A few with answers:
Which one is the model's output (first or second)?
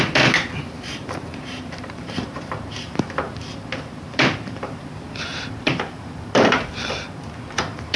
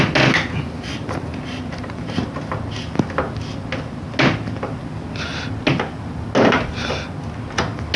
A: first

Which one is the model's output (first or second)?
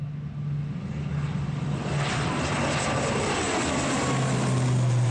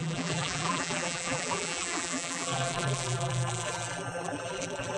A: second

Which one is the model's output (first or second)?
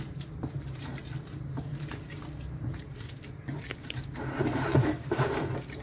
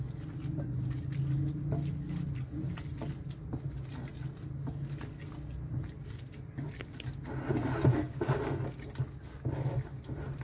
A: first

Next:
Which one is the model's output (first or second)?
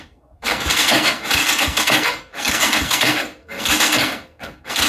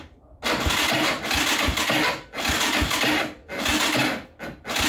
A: first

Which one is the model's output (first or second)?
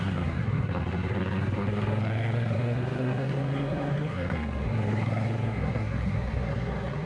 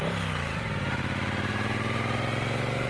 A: first